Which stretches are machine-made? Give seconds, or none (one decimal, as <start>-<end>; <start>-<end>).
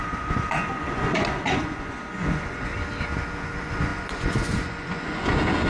0.0-2.7; 3.4-5.7